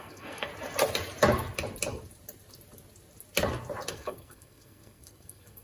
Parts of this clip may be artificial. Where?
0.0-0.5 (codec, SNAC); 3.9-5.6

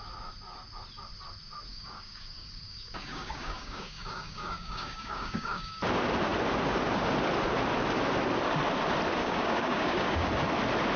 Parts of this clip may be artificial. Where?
1.7-5.8 (codec, DAC); 9.2-10.3

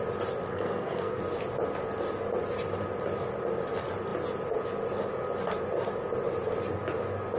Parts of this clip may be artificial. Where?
0.5-1.2 (codec, SNAC)

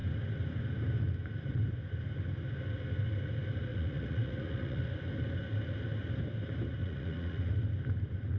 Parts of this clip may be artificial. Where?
3.7-4.8 (vocoder, Vocos); 6.8-7.5

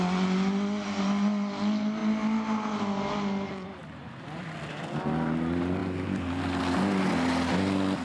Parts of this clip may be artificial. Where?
none

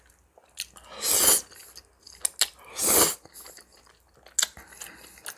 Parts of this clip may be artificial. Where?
none

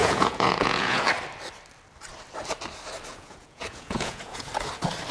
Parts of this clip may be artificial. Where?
0.0-1.0 (vocoder, Vocos); 3.1-4.5

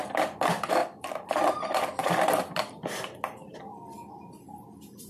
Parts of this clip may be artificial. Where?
0.8-1.3 (vocoder, BigVGAN v2)